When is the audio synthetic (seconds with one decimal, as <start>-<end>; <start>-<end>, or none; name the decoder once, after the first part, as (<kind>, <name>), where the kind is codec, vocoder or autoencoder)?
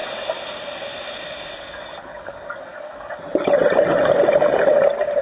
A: 2.1-3.2 (codec, DAC)